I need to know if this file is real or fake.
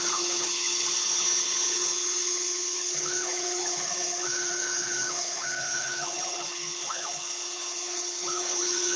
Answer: fake